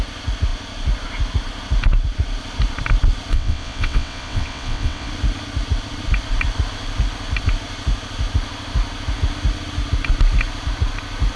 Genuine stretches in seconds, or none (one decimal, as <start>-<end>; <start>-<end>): 0.0-3.3; 5.1-11.4